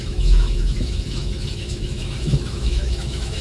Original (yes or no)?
no